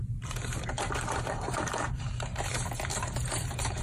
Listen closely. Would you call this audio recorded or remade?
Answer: remade